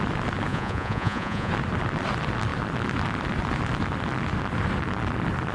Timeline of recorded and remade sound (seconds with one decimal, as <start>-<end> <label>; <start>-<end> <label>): 0.0-0.5 recorded; 0.5-1.5 remade; 1.5-5.5 recorded